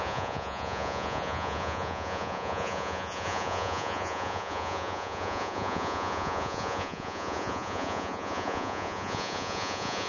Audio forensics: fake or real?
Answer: fake